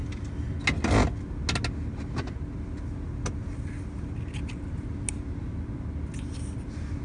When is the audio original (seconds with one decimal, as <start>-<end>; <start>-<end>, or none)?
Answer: 0.0-7.0